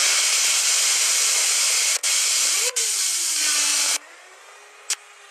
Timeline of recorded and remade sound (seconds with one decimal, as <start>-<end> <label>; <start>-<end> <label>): 0.0-2.0 recorded; 2.0-3.0 remade; 3.0-3.7 recorded; 3.7-4.4 remade; 4.4-5.3 recorded